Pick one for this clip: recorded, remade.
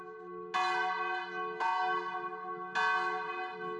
recorded